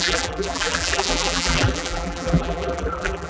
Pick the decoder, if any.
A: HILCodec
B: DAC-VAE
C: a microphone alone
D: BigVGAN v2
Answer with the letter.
D